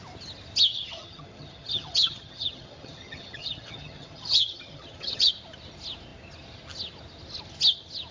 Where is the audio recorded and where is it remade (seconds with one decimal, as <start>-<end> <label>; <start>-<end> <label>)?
0.0-0.7 recorded; 0.7-5.3 remade; 5.3-8.1 recorded